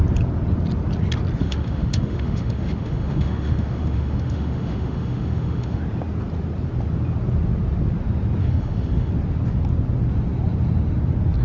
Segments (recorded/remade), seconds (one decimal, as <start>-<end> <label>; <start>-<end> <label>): 0.0-1.4 recorded; 1.4-5.8 remade; 5.8-8.4 recorded; 8.4-9.1 remade; 9.1-11.4 recorded